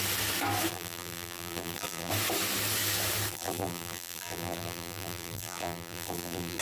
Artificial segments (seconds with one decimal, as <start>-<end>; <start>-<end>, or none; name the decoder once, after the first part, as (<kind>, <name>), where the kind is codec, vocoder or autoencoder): 0.7-2.1 (vocoder, BigVGAN v2); 3.3-6.6